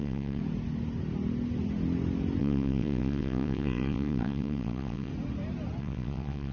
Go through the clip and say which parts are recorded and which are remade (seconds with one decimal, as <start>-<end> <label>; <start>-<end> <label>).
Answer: 0.0-0.4 remade; 0.4-2.4 recorded; 2.4-5.1 remade; 5.1-5.8 recorded; 5.8-6.5 remade